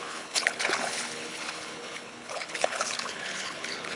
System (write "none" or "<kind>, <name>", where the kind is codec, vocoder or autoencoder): codec, HILCodec